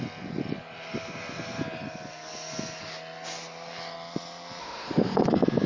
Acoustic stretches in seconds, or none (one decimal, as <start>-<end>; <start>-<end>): 0.0-4.6; 5.3-5.7